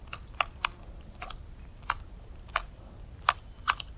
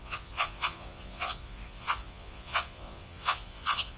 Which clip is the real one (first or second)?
first